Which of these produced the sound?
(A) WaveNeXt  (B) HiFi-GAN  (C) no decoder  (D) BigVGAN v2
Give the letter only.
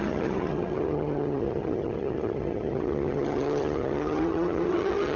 B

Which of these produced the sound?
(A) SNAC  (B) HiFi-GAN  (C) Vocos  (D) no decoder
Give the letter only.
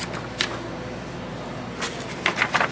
D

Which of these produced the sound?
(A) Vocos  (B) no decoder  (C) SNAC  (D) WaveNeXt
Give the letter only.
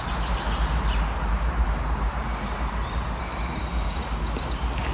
B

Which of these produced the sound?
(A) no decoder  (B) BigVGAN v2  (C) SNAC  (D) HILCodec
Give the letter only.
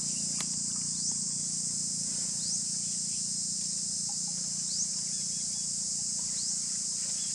A